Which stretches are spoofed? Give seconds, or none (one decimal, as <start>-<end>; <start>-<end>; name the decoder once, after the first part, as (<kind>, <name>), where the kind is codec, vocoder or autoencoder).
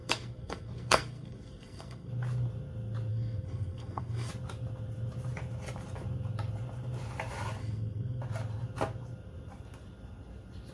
0.0-2.1 (codec, SNAC); 3.1-4.3; 7.6-8.2